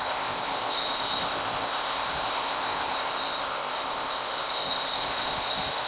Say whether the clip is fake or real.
fake